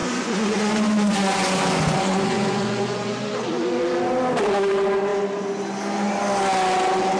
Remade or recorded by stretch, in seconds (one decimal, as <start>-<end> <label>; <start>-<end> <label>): 0.0-3.2 remade; 3.2-7.2 recorded